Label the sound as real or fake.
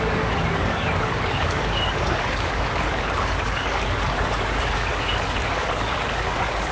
fake